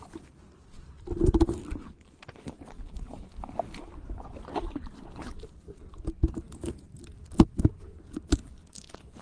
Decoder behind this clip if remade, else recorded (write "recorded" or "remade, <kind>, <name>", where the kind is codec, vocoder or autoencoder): recorded